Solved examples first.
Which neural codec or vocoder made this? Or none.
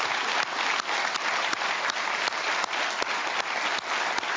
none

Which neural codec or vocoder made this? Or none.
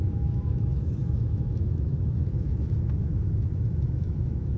autoencoder, DAC-VAE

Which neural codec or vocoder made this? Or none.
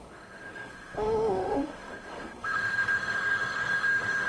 autoencoder, DAC-VAE